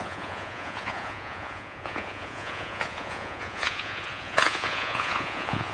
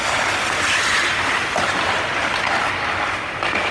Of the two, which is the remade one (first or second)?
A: first